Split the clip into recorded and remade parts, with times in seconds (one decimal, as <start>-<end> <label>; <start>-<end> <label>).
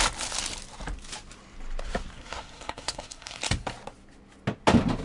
0.0-2.1 recorded; 2.1-3.4 remade; 3.4-5.0 recorded